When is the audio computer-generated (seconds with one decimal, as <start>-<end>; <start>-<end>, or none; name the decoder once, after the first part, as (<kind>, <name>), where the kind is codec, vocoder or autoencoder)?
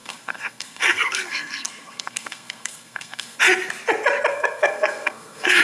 0.0-3.4 (codec, SNAC); 4.3-5.6